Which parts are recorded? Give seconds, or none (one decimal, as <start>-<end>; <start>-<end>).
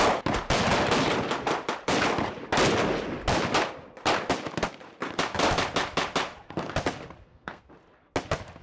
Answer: 0.0-7.2; 7.7-8.6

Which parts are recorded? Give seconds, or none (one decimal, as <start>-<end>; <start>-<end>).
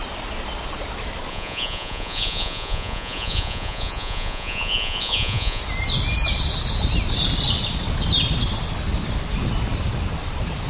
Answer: 0.0-1.3; 5.6-10.7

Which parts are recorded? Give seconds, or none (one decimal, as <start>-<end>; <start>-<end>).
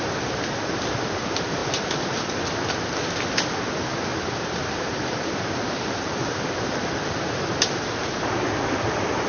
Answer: 0.0-1.6; 2.2-4.1; 7.4-9.3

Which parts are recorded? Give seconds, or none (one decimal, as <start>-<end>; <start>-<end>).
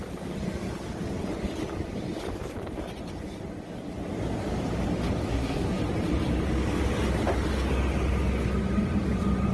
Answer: 0.0-5.3; 5.8-9.5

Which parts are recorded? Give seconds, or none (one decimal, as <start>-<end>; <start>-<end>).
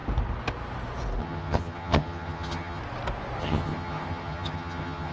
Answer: 0.0-1.2; 2.8-3.4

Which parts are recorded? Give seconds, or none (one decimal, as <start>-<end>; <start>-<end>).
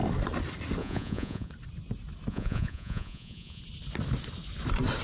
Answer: 0.0-0.8; 1.5-2.3; 3.6-5.0